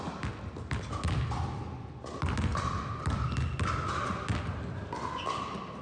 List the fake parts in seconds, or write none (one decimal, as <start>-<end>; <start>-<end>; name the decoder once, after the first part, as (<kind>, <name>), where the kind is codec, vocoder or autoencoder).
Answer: none